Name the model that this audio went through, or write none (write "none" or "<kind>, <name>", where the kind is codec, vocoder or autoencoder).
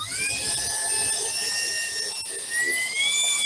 none